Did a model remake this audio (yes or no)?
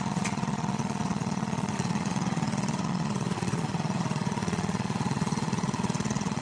yes